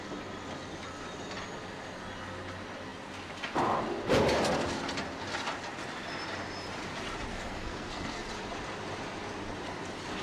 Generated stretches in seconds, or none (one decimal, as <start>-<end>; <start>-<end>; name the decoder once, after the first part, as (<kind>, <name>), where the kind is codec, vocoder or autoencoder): 7.3-8.3 (codec, SNAC)